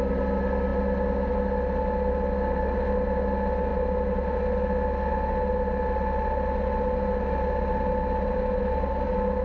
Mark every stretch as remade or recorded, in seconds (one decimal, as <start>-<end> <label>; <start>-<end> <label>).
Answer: 0.0-9.4 recorded